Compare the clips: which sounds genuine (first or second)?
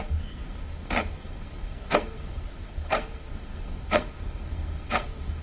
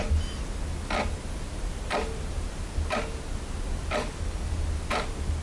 second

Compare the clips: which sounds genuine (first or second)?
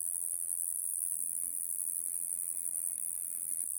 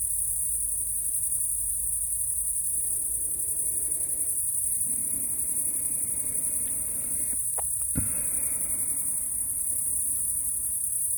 second